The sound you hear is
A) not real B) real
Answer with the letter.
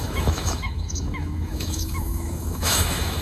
A